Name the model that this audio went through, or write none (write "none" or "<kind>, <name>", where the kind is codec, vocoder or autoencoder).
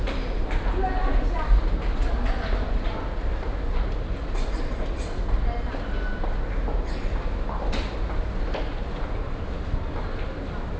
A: none